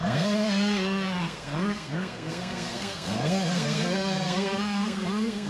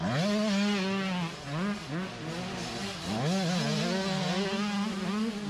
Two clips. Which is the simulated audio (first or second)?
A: first